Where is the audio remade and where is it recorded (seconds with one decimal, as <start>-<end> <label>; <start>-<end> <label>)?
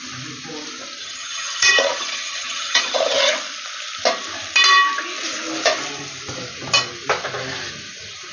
0.0-1.0 recorded; 1.0-3.3 remade; 3.3-8.3 recorded